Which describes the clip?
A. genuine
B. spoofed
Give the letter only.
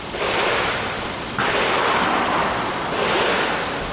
A